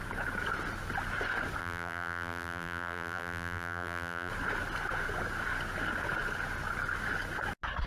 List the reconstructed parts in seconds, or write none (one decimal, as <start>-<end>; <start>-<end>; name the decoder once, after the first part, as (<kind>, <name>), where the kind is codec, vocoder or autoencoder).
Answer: 1.6-4.3 (vocoder, BigVGAN v2)